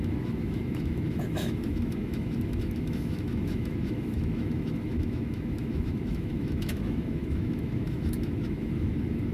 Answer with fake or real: fake